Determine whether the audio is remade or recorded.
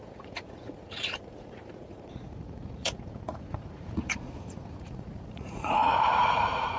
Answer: remade